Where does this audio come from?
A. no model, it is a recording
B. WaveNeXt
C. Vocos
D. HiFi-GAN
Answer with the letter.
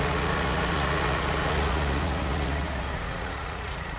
C